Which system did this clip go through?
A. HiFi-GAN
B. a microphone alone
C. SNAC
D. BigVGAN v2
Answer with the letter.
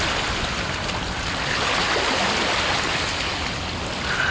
B